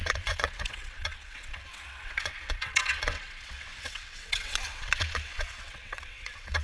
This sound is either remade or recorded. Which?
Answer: remade